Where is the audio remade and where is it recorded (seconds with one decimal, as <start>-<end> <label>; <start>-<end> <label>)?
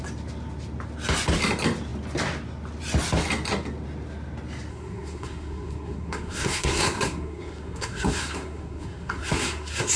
0.0-4.7 recorded; 4.7-10.0 remade